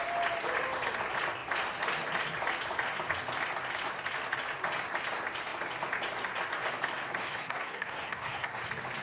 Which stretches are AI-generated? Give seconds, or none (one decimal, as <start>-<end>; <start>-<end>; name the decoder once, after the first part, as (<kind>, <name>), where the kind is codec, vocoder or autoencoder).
7.2-8.6 (codec, SNAC)

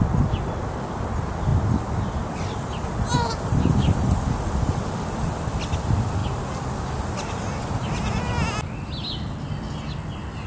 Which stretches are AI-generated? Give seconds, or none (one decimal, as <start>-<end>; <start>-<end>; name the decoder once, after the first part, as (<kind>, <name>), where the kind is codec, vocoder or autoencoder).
none

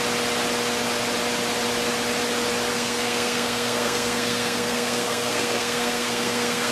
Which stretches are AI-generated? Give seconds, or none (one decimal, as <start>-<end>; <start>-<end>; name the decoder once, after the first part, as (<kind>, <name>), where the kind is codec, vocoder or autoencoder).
2.7-6.7 (codec, SNAC)